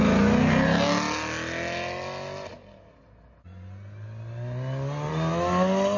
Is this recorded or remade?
recorded